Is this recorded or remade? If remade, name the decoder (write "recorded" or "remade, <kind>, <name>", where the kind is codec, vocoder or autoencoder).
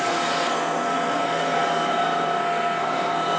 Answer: remade, codec, SNAC